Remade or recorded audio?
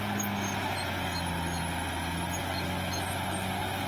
recorded